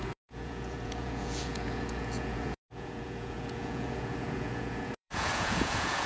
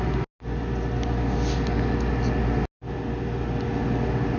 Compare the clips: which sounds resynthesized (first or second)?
first